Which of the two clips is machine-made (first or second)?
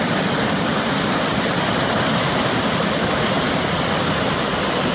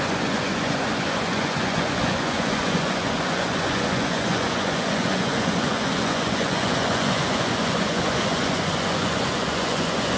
second